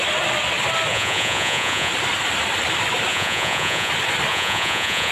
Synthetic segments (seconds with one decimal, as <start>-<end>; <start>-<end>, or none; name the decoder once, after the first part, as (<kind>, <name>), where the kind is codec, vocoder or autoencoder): 0.9-1.9 (vocoder, Vocos); 3.1-3.9; 4.3-5.1